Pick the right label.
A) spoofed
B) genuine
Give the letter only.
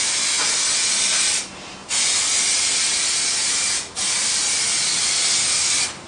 B